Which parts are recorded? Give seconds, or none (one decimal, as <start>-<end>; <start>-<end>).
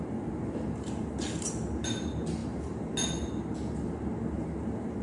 0.0-5.0